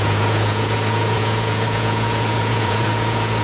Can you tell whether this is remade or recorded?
remade